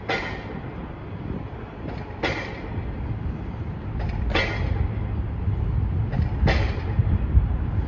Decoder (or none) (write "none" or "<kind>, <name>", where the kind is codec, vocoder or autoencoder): none